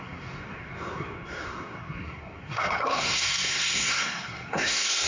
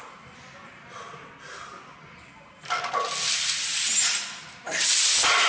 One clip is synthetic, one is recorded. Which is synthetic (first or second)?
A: first